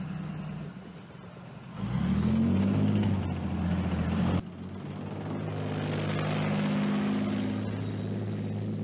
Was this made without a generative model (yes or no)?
yes